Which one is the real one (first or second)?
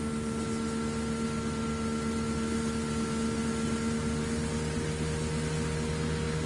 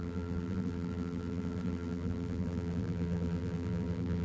first